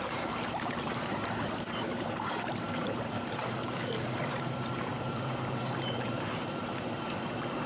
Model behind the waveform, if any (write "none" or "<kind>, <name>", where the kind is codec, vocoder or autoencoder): vocoder, BigVGAN v2